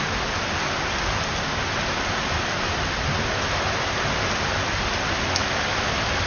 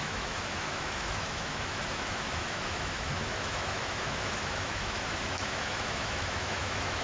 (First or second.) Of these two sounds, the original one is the first